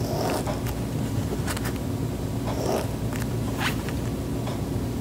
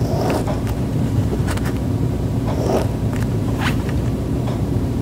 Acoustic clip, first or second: first